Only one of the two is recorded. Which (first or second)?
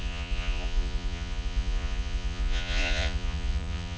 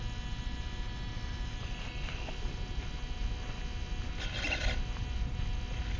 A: second